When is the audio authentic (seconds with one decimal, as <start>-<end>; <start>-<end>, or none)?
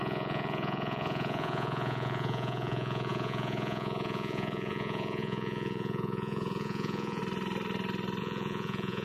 7.2-8.2